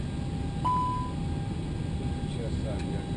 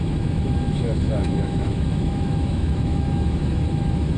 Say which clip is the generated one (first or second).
second